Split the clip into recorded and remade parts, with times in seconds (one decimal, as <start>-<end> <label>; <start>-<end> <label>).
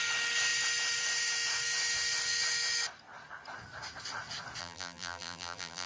0.0-4.6 recorded; 4.6-5.9 remade